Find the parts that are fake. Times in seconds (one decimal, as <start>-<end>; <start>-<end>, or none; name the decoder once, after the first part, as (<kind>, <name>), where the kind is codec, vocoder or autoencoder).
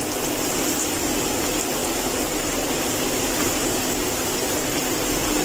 none